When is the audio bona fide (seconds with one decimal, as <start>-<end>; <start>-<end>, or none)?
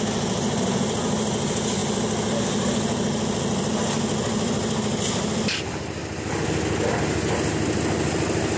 0.0-8.6